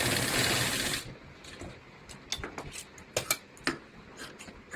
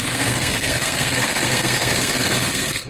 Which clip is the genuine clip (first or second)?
first